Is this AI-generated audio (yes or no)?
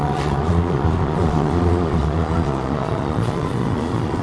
yes